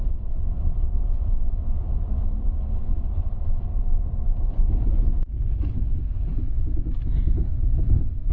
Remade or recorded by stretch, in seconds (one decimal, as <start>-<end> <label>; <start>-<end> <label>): 0.0-8.3 recorded